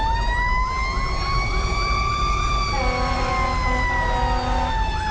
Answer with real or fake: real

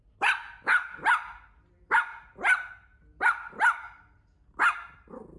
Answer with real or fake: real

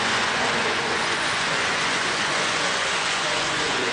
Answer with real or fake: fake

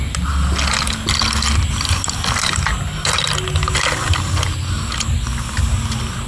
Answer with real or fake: real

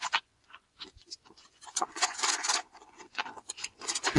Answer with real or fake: fake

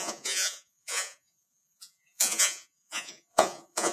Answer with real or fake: fake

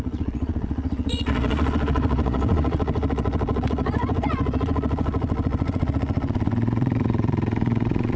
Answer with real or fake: fake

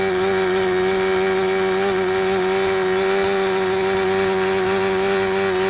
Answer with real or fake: real